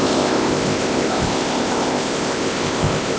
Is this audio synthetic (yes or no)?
yes